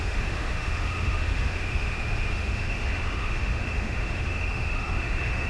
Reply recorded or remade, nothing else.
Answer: remade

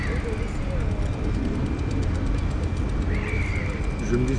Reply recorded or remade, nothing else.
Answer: recorded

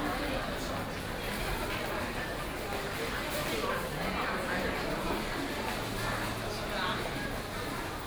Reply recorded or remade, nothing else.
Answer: recorded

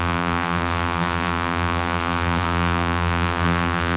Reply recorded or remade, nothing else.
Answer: remade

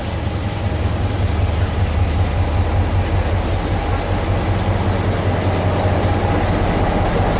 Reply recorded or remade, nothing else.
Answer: recorded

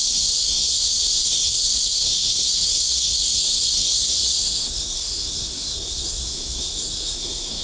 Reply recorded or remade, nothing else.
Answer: remade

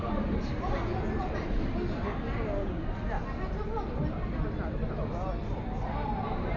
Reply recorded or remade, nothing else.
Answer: recorded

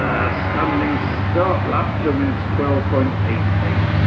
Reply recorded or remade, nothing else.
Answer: recorded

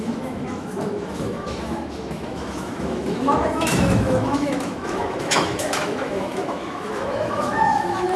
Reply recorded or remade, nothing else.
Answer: remade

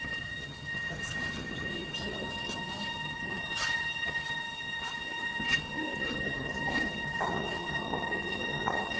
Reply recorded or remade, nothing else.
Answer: remade